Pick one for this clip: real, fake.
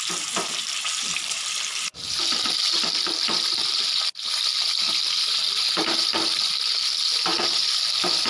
fake